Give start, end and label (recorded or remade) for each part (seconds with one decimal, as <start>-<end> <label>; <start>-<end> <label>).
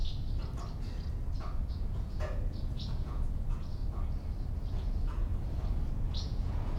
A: 0.0-1.7 recorded; 1.7-3.8 remade; 3.8-4.7 recorded; 4.7-5.3 remade; 5.3-5.9 recorded; 5.9-6.8 remade